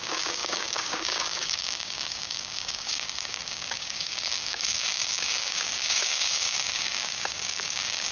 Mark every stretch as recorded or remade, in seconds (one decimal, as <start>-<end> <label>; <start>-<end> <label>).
0.0-8.1 remade